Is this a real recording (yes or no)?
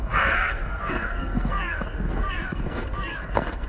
no